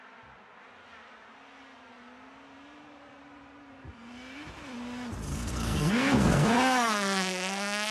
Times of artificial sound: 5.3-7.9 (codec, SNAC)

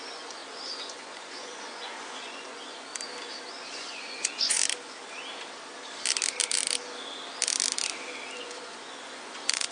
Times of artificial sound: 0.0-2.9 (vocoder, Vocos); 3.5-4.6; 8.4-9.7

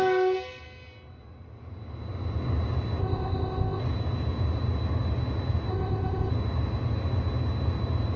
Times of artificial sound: 3.0-3.8 (codec, ZipCodec); 5.7-6.3